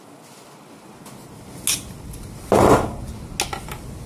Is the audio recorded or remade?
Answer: recorded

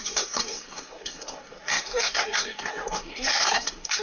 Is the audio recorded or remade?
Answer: remade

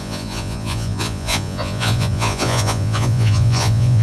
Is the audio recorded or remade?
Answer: remade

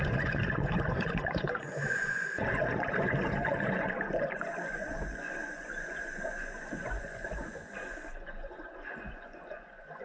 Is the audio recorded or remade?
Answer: remade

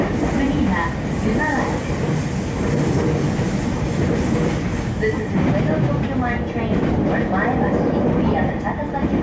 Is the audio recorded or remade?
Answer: recorded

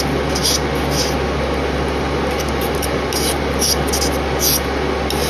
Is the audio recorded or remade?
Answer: recorded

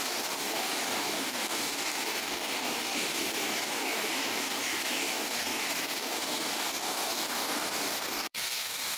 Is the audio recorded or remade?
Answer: remade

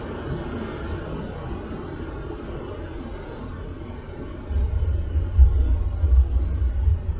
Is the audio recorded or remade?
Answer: recorded